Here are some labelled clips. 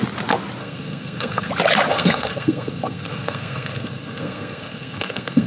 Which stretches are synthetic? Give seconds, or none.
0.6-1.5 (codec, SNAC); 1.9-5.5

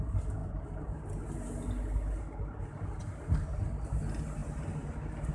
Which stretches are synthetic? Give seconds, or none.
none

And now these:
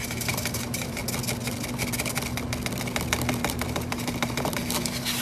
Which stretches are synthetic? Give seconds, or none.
0.0-1.0 (vocoder, BigVGAN v2); 3.5-4.6